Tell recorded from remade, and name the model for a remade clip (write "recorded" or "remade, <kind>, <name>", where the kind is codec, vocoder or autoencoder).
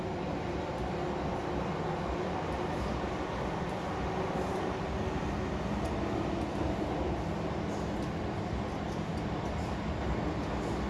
recorded